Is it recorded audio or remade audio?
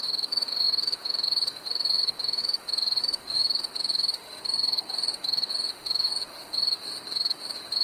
remade